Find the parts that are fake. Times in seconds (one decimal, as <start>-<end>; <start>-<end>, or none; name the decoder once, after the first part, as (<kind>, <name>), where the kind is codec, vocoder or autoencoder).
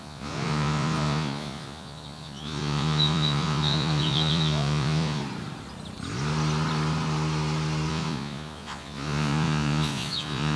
0.0-5.2 (vocoder, Vocos); 7.9-10.6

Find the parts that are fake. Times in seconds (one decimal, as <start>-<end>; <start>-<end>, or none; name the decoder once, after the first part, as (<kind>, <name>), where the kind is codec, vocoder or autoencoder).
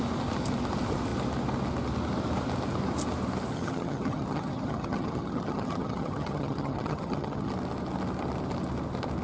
3.5-7.5 (vocoder, HiFi-GAN)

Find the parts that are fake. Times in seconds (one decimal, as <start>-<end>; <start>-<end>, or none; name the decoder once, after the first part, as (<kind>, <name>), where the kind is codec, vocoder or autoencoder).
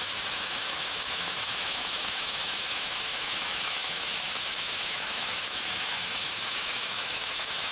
0.0-7.7 (autoencoder, DAC-VAE)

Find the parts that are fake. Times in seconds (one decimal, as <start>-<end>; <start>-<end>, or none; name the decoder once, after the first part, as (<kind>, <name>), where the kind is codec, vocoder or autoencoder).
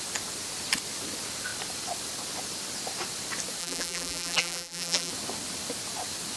3.6-5.1 (vocoder, BigVGAN v2)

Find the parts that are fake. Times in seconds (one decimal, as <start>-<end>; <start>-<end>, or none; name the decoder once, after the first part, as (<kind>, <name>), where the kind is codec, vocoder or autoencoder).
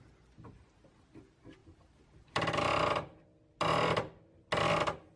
none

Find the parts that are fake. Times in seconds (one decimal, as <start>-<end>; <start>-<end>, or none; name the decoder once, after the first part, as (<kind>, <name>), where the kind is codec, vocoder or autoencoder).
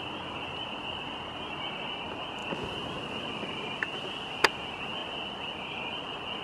none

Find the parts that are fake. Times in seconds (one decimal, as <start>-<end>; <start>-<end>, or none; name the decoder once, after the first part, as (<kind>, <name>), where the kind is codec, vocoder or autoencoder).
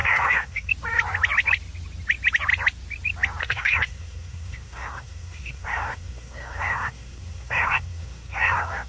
0.0-0.7 (codec, SNAC); 3.4-8.9